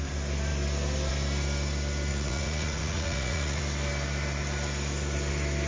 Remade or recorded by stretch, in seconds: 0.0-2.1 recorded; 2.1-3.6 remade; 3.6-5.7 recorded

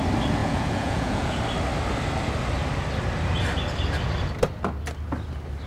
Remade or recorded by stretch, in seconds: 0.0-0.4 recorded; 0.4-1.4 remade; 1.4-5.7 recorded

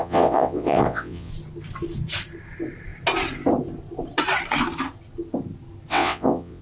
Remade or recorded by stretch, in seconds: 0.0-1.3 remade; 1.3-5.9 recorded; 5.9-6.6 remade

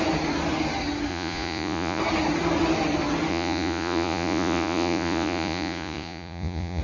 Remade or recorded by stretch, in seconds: 0.0-1.1 recorded; 1.1-2.0 remade; 2.0-3.3 recorded; 3.3-6.8 remade